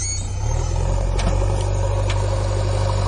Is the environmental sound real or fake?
real